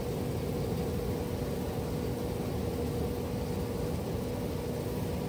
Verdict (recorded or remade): recorded